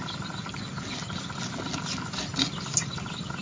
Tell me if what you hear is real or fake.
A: real